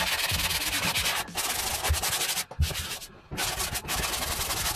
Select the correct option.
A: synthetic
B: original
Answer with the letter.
B